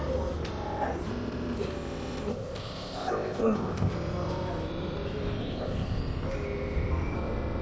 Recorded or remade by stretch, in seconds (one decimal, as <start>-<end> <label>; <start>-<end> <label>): 0.0-2.3 recorded; 2.3-3.9 remade; 3.9-5.4 recorded; 5.4-6.0 remade; 6.0-7.6 recorded